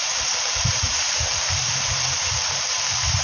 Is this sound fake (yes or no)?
yes